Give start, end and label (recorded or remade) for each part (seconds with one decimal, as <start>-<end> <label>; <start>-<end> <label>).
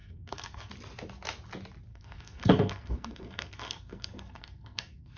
0.0-0.7 remade; 0.7-1.9 recorded; 1.9-5.2 remade